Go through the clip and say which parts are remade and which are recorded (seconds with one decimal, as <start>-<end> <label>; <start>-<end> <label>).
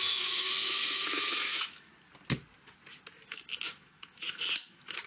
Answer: 0.0-1.9 remade; 1.9-3.3 recorded; 3.3-5.1 remade